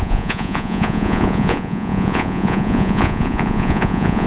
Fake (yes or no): yes